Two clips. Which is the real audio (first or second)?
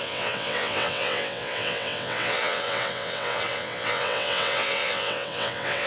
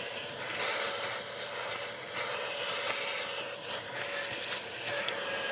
second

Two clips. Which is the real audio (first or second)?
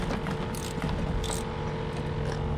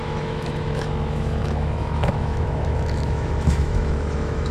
first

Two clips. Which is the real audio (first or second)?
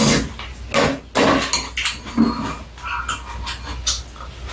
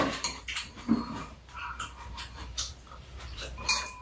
first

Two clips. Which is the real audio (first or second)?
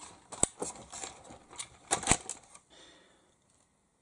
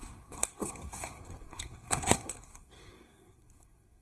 first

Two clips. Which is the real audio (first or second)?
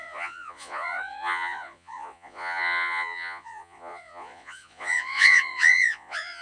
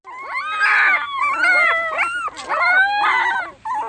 second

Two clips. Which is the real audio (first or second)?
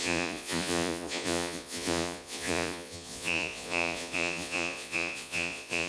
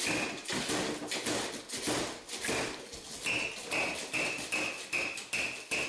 second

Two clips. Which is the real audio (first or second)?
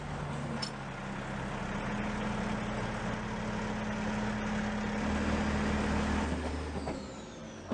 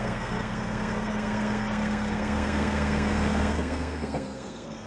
first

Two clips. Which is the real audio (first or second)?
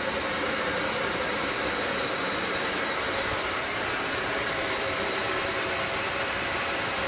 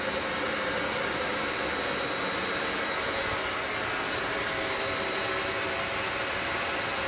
second